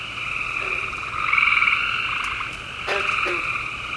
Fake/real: real